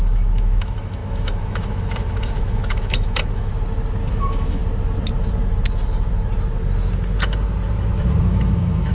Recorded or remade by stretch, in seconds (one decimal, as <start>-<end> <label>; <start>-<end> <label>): 0.0-3.5 remade; 3.5-4.1 recorded; 4.1-4.6 remade; 4.6-8.2 recorded; 8.2-8.9 remade